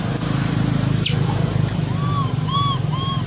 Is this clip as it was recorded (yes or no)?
yes